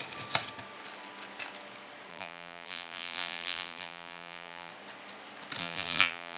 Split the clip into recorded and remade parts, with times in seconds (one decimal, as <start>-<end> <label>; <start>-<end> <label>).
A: 0.0-2.1 recorded; 2.1-4.7 remade; 4.7-5.6 recorded; 5.6-6.4 remade